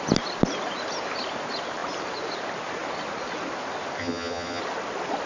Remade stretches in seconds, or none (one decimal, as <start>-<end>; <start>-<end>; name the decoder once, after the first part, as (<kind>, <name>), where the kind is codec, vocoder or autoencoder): 4.0-4.6 (vocoder, HiFi-GAN)